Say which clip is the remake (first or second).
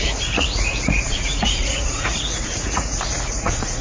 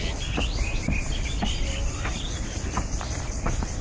first